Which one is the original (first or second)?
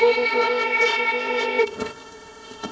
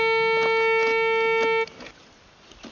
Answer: second